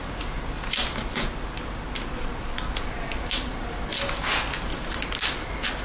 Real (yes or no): yes